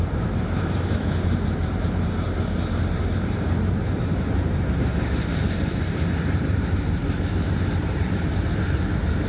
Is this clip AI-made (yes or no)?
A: yes